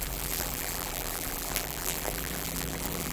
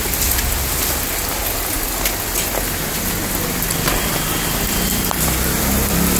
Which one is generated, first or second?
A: first